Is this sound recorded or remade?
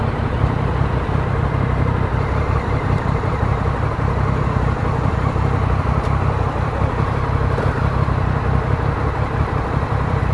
remade